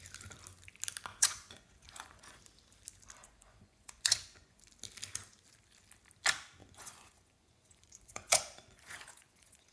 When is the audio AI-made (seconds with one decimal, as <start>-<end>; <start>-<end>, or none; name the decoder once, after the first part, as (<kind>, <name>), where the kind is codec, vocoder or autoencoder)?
1.1-2.4 (vocoder, Vocos); 3.2-4.6; 6.6-9.7